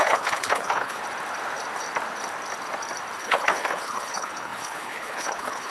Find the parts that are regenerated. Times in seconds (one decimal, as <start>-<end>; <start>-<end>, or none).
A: 0.0-1.0; 3.2-5.7